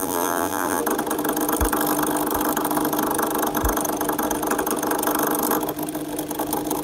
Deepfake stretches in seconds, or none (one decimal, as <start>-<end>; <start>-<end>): 0.0-0.8